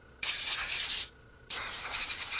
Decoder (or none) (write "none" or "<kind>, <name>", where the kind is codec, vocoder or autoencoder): vocoder, Vocos